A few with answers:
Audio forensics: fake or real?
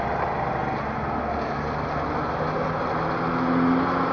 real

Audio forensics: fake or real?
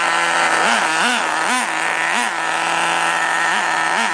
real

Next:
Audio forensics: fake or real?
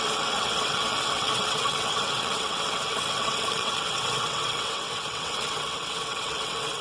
fake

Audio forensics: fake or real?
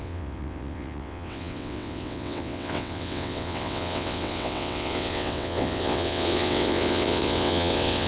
fake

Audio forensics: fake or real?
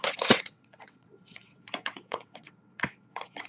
fake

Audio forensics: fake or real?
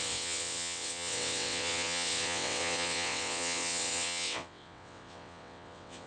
fake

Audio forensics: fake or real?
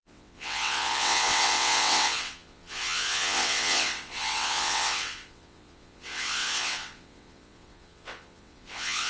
fake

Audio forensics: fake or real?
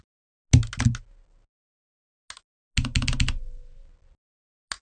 real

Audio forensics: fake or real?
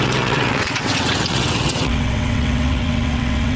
fake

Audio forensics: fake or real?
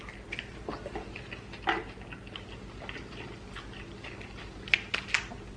real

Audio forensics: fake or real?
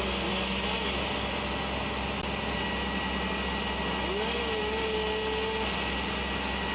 real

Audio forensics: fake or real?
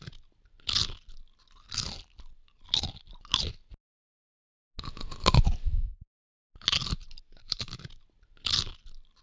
real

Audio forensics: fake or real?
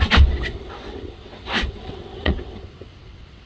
fake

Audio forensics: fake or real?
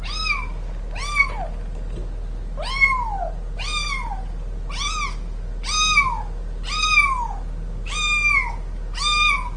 real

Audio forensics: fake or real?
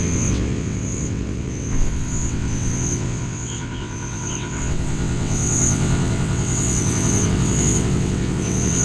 fake